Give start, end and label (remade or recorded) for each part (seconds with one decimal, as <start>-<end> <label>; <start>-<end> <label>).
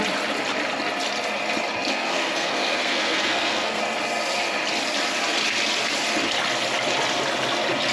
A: 0.0-1.9 recorded; 1.9-3.8 remade; 3.8-7.9 recorded